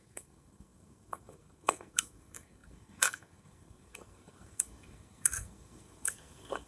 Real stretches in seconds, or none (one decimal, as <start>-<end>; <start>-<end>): none